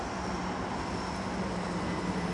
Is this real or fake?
real